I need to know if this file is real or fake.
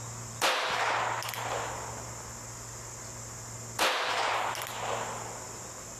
real